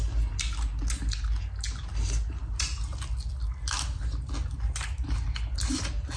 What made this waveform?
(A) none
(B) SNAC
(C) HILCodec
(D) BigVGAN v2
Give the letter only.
A